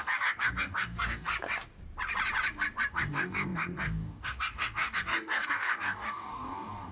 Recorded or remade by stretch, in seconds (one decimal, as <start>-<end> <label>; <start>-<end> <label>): 0.0-1.3 remade; 1.3-2.9 recorded; 2.9-6.9 remade